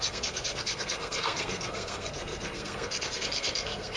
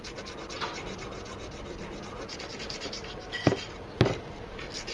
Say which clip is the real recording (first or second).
second